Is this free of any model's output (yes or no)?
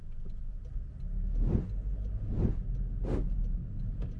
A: yes